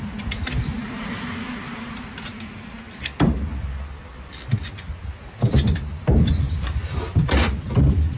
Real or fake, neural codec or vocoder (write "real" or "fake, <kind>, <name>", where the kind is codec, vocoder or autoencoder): real